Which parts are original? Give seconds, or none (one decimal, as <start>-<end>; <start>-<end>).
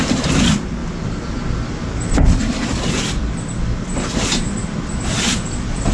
0.0-0.8; 2.2-2.6; 3.9-4.6